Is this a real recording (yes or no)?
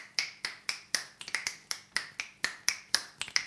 no